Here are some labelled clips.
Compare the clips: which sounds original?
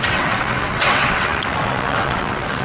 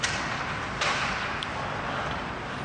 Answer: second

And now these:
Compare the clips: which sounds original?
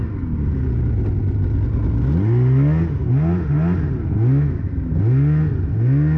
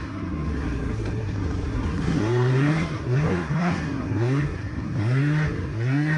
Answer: first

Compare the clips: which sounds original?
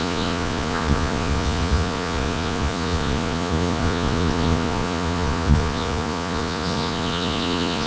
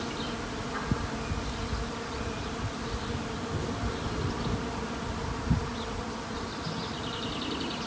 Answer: second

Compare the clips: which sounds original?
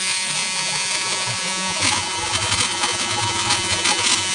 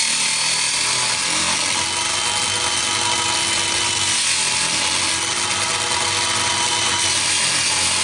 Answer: second